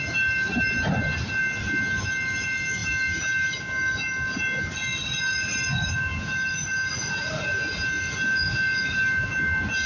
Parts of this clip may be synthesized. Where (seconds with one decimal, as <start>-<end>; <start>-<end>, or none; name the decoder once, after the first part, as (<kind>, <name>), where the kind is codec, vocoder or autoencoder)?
none